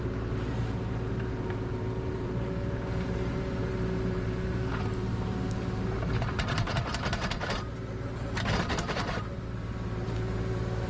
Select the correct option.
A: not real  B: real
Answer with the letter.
A